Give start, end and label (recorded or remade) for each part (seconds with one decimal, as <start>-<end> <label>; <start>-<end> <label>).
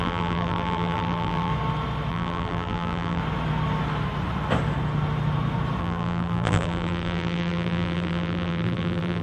0.0-1.5 remade; 1.5-2.1 recorded; 2.1-3.2 remade; 3.2-5.8 recorded; 5.8-9.2 remade